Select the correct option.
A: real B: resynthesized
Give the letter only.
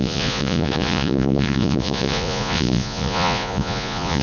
B